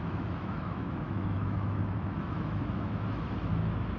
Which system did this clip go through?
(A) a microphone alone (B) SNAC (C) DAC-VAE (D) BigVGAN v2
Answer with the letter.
C